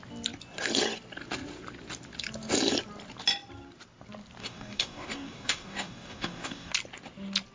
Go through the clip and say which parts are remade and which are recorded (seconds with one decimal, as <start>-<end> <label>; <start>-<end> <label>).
0.0-4.4 recorded; 4.4-6.7 remade; 6.7-7.5 recorded